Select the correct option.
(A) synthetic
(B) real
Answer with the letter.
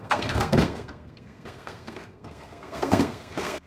A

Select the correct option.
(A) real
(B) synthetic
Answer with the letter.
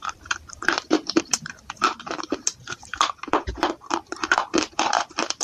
B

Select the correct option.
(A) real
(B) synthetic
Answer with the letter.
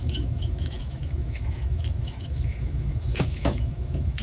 B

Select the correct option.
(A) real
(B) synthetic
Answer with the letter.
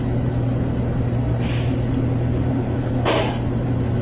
A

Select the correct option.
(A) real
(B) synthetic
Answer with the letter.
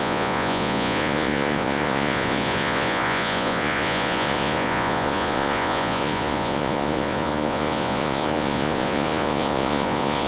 B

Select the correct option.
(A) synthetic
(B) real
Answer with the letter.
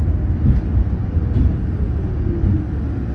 B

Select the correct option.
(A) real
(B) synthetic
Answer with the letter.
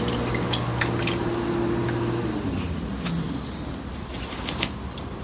A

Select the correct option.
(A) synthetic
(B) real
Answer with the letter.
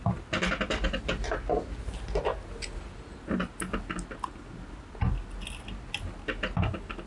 B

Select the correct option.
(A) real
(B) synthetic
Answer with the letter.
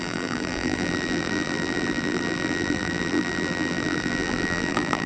B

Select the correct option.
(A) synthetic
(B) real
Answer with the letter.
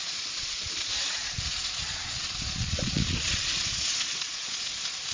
A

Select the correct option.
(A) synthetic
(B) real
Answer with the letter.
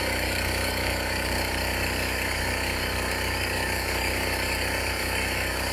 A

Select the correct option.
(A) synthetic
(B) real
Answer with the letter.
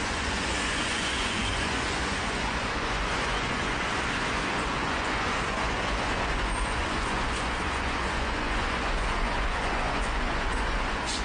A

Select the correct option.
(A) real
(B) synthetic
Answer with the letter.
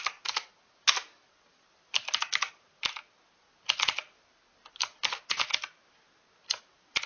A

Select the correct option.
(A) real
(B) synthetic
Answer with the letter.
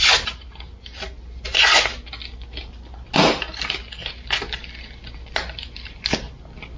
A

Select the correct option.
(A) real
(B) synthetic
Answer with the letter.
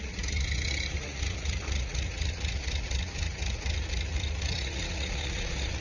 B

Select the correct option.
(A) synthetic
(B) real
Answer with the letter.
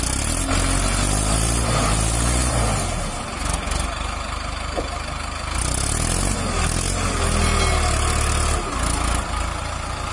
B